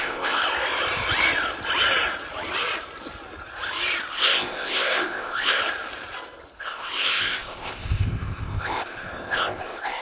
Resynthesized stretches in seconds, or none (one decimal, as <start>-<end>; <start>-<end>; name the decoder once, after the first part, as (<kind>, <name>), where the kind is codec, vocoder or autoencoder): 0.0-0.4 (codec, ZipCodec); 4.1-5.6; 6.6-10.0